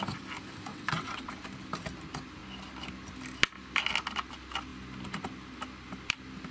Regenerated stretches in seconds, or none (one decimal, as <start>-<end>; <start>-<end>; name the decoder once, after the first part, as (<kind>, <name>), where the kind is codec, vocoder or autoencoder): 0.7-1.3 (vocoder, WaveNeXt)